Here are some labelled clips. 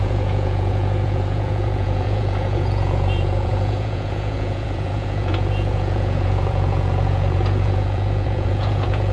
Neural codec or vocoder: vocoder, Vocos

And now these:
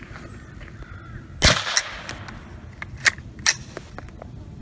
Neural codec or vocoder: none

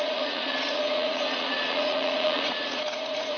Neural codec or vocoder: vocoder, Vocos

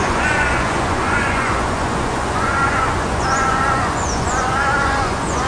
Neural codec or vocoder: vocoder, Vocos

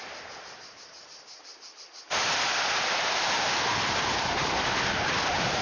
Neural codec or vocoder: none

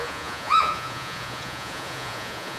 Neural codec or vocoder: vocoder, Vocos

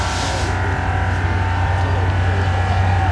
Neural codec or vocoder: none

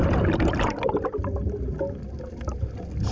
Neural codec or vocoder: none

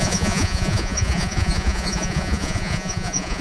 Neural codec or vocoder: vocoder, Vocos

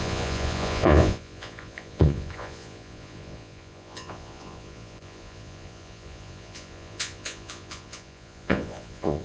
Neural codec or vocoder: vocoder, Vocos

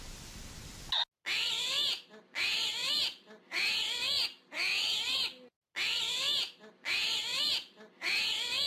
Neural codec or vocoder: none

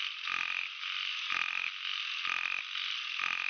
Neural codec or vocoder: none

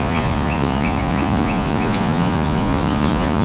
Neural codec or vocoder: vocoder, Vocos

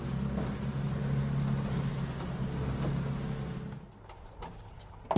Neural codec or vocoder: none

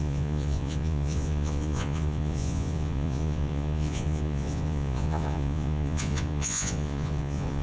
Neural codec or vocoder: vocoder, Vocos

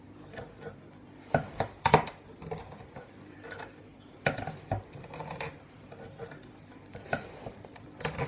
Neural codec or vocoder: none